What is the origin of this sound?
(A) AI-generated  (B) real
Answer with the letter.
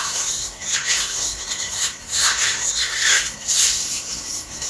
A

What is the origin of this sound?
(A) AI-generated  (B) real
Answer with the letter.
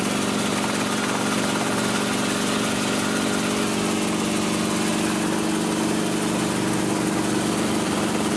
B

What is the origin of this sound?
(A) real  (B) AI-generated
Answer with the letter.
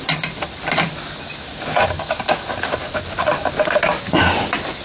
A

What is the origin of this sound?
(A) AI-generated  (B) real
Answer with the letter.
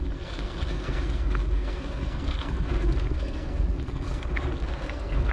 A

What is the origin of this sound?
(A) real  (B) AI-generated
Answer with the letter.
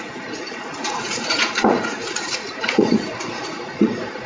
B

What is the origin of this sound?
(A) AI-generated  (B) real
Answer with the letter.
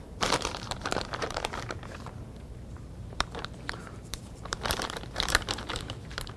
A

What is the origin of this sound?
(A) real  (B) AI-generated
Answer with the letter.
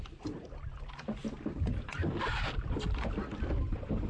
A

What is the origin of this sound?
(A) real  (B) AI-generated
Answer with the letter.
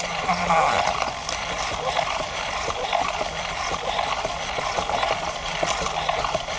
A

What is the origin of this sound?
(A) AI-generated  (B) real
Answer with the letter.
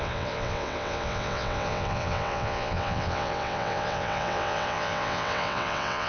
A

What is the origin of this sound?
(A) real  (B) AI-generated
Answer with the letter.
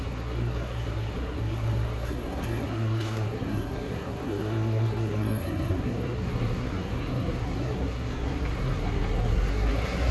B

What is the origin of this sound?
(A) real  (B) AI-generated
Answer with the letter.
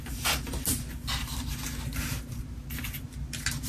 A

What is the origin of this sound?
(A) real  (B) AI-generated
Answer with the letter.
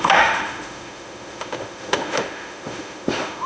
B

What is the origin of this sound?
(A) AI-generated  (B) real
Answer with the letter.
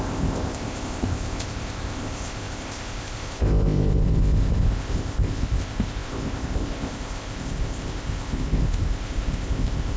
A